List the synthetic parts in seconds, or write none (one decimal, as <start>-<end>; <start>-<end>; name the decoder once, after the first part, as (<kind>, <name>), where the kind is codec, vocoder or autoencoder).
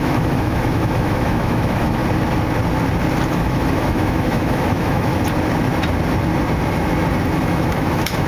0.0-2.0 (autoencoder, DAC-VAE); 3.3-5.1; 7.4-8.3